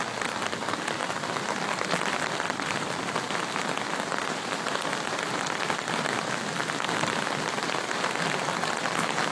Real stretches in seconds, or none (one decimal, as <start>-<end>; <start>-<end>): 0.0-1.0; 5.8-9.3